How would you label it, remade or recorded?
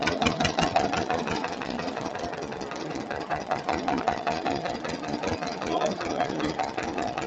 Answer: remade